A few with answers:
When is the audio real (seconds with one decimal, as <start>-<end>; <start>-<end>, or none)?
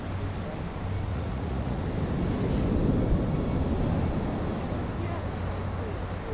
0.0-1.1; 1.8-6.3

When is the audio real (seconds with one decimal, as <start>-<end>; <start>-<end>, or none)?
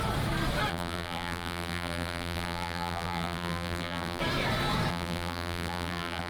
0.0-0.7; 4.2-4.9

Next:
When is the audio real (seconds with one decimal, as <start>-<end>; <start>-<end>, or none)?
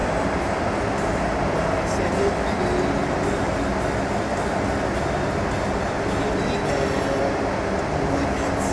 0.0-8.7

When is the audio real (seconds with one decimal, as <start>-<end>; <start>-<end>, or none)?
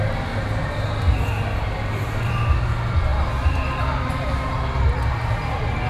0.0-5.9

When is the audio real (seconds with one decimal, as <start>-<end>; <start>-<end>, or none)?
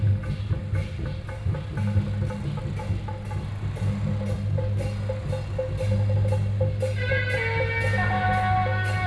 0.0-9.1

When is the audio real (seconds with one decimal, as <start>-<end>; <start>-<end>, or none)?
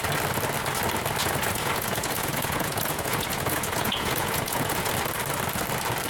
0.0-1.2; 4.9-6.1